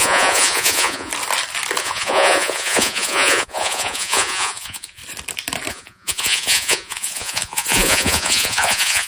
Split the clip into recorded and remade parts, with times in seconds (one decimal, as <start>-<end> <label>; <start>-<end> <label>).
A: 0.0-1.1 remade; 1.1-1.8 recorded; 1.8-5.0 remade; 5.0-5.7 recorded; 5.7-9.1 remade